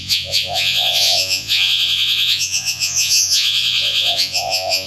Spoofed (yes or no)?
yes